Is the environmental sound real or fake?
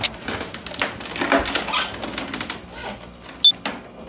real